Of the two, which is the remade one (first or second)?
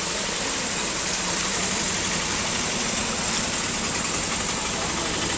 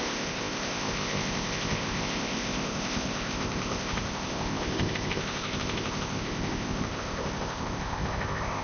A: second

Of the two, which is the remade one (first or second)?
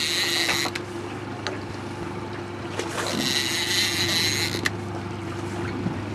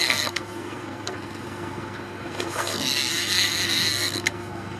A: second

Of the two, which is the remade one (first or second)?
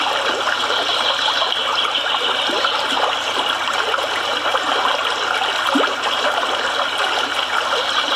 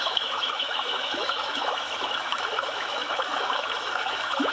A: second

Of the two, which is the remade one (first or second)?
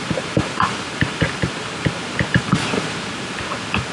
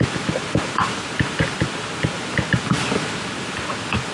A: first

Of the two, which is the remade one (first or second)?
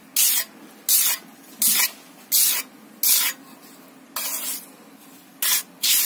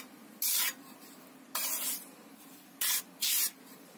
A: second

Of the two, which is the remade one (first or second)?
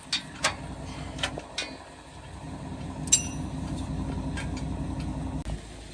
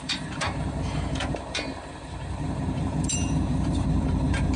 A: second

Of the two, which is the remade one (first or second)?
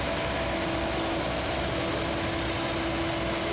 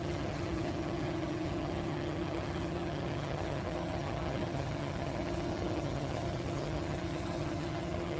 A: second